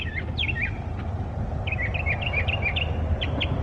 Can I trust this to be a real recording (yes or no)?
yes